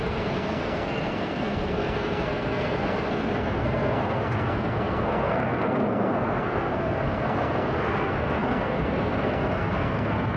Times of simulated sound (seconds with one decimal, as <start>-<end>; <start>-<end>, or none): 0.0-10.4